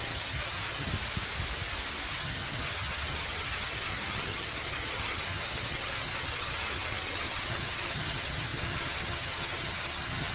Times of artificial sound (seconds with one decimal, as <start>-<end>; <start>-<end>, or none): 0.0-0.9; 2.1-10.3